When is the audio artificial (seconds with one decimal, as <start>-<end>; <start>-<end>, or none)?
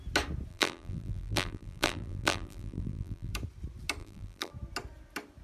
0.5-3.3; 4.0-4.5